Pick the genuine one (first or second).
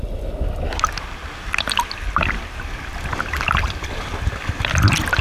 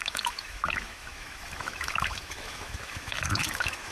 first